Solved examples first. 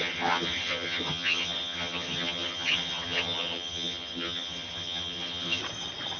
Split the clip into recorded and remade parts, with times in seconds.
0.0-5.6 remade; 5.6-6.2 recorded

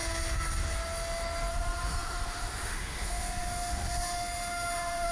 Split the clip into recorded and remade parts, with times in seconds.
0.0-1.5 recorded; 1.5-5.1 remade

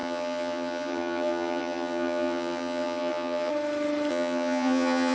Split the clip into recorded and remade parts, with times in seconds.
0.0-3.5 remade; 3.5-4.1 recorded; 4.1-5.1 remade

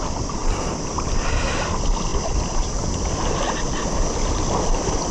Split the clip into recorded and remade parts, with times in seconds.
0.0-5.1 recorded

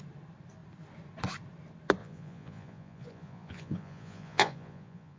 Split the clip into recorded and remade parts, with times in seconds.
0.0-2.0 recorded; 2.0-5.2 remade

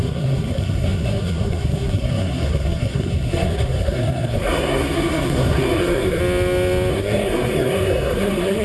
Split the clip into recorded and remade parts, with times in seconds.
0.0-6.2 remade; 6.2-6.9 recorded; 6.9-8.6 remade

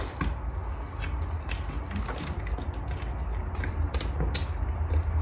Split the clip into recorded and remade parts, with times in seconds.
0.0-5.2 recorded